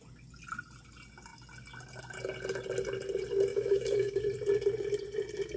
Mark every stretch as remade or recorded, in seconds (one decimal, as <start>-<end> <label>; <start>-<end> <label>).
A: 0.0-3.5 recorded; 3.5-4.2 remade; 4.2-5.6 recorded